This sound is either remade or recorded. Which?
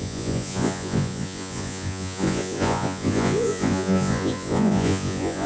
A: remade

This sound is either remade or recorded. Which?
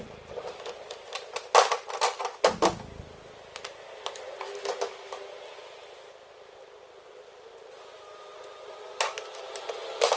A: recorded